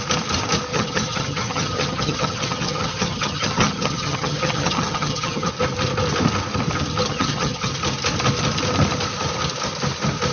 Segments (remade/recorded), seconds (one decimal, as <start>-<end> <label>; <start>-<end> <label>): 0.0-0.7 recorded; 0.7-5.5 remade; 5.5-7.1 recorded; 7.1-7.7 remade; 7.7-10.3 recorded

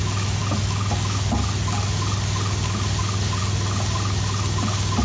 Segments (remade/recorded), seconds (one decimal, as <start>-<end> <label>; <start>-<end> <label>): 0.0-5.0 recorded

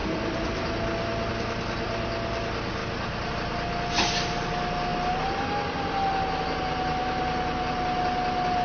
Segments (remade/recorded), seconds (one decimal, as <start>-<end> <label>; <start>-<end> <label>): 0.0-8.6 recorded

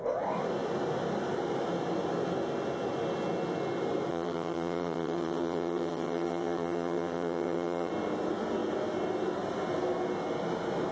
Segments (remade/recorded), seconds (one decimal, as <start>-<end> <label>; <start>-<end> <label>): 0.0-4.1 recorded; 4.1-7.9 remade; 7.9-10.9 recorded

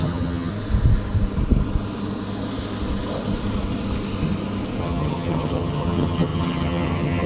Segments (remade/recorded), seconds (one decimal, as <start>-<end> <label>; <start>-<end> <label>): 0.0-0.5 remade; 0.5-4.8 recorded; 4.8-7.3 remade

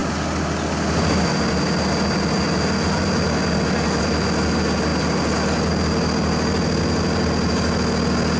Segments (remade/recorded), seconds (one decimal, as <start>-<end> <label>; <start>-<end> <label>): 0.0-8.4 recorded

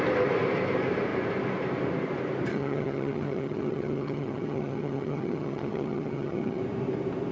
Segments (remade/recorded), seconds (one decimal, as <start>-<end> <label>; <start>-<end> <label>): 0.0-2.5 recorded; 2.5-6.6 remade; 6.6-7.3 recorded